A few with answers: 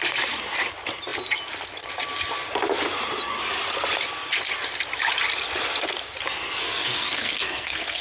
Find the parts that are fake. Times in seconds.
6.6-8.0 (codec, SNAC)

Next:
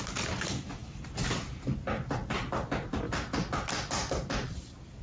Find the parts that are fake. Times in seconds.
none

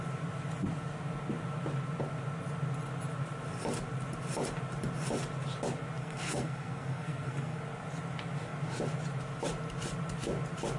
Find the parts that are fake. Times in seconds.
6.0-7.6 (codec, SNAC)

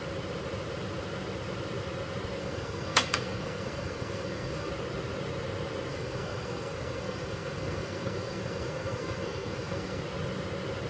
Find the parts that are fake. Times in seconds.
2.4-4.7 (codec, SNAC); 5.9-10.0